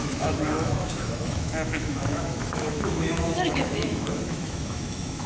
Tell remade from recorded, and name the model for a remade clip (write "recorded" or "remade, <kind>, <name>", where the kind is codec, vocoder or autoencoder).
remade, autoencoder, DAC-VAE